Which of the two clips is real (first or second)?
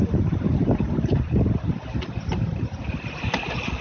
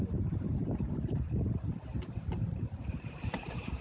first